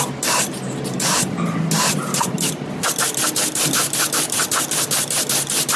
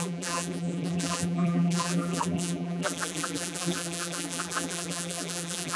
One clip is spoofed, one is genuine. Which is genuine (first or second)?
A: first